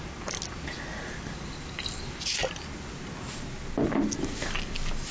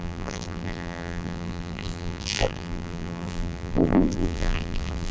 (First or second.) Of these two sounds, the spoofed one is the second